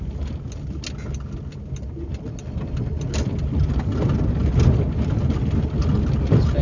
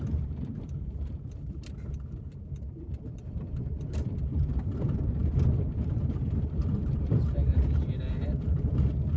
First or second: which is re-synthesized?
second